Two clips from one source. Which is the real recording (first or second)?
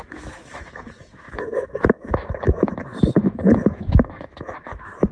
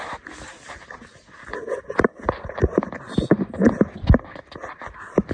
second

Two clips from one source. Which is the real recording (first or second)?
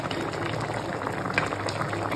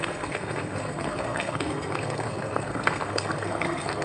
first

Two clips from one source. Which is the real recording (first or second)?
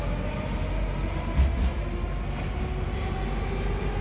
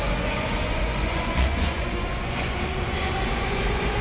first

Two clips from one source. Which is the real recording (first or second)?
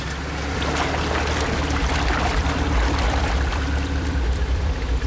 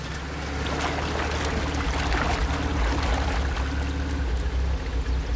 second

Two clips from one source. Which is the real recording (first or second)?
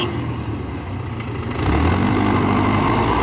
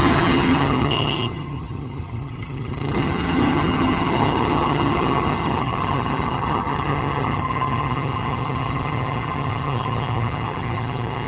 first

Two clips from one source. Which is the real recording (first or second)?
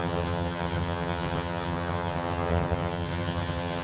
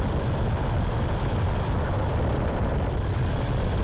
second